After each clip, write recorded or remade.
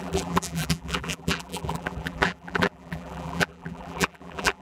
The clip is remade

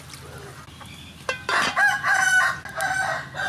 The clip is recorded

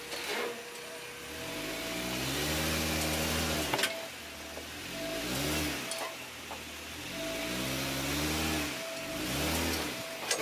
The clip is recorded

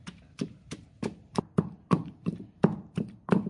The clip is remade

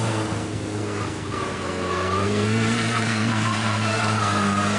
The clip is remade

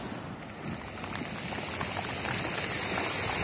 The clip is recorded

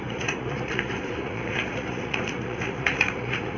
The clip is remade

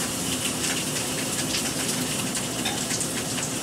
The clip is remade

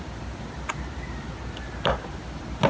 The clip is recorded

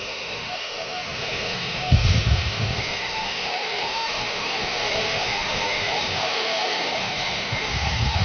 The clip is remade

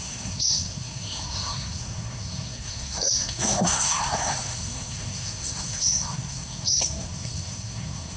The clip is remade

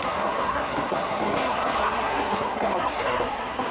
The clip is remade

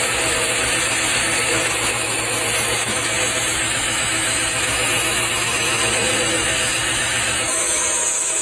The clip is remade